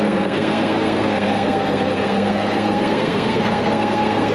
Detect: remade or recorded remade